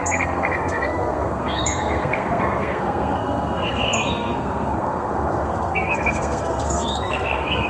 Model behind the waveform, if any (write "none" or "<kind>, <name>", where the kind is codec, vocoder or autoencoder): codec, SNAC